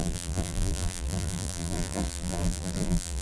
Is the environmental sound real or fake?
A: fake